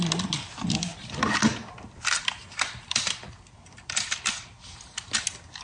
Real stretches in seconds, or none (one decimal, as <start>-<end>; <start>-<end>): 0.0-0.9; 4.3-5.6